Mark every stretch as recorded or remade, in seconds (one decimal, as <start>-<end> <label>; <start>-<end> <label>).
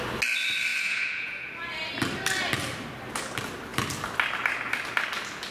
0.0-0.7 recorded; 0.7-1.5 remade; 1.5-5.5 recorded